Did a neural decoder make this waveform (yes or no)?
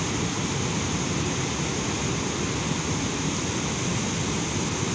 no